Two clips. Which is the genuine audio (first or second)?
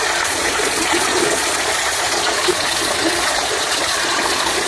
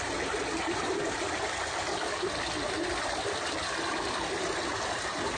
second